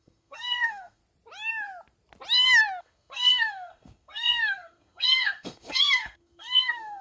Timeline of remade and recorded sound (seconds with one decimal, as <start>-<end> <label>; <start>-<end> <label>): 0.0-1.0 remade; 1.0-2.8 recorded; 2.8-7.0 remade